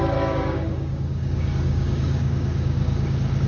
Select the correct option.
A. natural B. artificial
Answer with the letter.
B